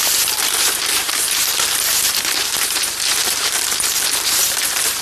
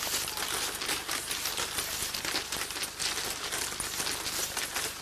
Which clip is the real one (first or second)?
second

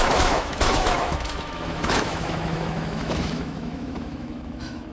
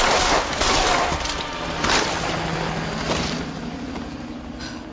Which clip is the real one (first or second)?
second